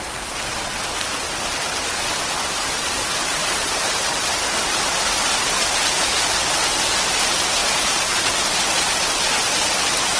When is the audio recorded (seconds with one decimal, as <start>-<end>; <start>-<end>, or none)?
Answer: 0.0-3.4; 4.1-7.6; 8.2-10.2

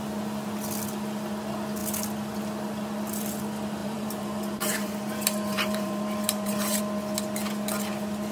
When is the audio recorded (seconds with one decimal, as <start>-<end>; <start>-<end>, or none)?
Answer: 0.0-3.8; 6.8-8.3

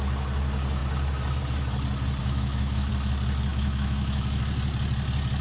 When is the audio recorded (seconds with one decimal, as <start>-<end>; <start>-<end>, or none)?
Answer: 0.0-2.2; 2.9-3.5; 4.4-5.4

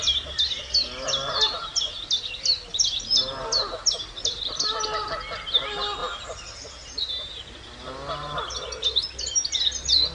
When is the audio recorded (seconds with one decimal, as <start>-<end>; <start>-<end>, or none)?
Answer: 0.0-10.1

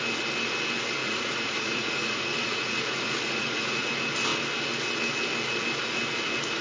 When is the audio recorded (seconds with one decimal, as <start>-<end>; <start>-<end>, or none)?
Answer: 0.0-1.0; 3.9-6.6

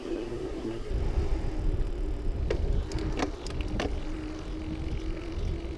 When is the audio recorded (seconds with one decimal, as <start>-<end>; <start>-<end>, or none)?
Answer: 0.9-5.8

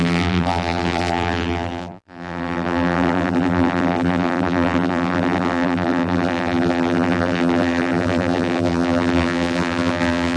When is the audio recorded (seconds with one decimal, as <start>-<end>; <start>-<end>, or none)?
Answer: none